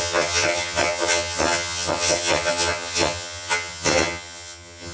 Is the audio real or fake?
fake